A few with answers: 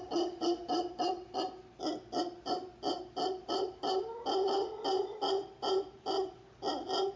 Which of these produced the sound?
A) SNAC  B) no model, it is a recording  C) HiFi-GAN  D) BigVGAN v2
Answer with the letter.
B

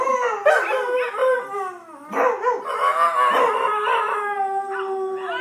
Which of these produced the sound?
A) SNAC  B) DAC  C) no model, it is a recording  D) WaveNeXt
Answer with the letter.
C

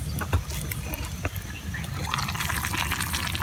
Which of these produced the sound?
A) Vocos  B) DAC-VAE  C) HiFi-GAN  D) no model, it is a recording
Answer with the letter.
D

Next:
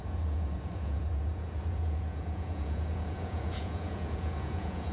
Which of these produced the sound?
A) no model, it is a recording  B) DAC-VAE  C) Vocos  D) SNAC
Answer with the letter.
C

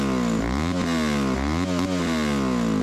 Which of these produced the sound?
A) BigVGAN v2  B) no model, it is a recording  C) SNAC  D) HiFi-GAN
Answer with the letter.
B